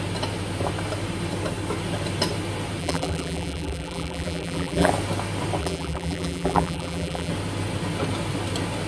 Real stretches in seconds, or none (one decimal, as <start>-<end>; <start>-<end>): 0.0-2.8; 4.9-5.6; 7.3-8.9